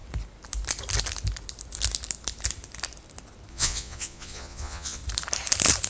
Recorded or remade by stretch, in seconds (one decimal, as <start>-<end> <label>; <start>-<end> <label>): 0.0-3.5 recorded; 3.5-5.0 remade; 5.0-5.9 recorded